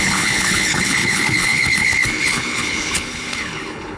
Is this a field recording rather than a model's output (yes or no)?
no